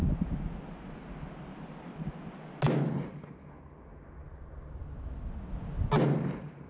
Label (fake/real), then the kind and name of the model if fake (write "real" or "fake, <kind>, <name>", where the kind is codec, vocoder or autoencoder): real